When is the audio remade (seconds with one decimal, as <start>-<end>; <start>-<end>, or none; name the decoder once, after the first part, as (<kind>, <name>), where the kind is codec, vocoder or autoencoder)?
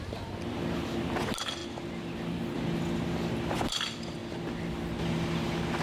0.0-1.6 (vocoder, BigVGAN v2); 2.6-4.2